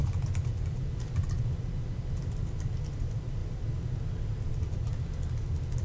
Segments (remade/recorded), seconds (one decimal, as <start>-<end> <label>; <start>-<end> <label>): 0.0-1.4 remade; 1.4-3.4 recorded; 3.4-4.9 remade; 4.9-5.8 recorded